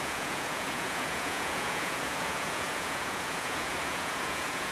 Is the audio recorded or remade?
remade